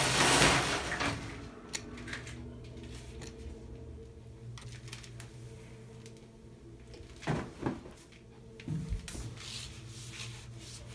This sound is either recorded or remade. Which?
recorded